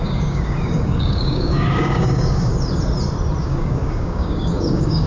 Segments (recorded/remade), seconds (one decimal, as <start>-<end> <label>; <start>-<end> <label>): 0.0-2.5 remade; 2.5-3.4 recorded; 3.4-5.1 remade